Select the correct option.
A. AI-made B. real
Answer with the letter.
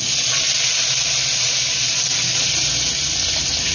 B